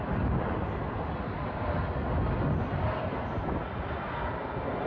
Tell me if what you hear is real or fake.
real